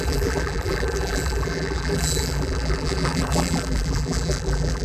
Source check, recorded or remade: remade